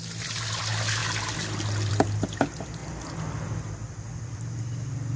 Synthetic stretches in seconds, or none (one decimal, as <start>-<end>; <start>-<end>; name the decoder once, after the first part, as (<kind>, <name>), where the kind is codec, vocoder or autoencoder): none